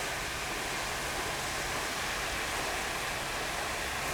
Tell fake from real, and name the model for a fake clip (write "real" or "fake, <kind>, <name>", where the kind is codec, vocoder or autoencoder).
real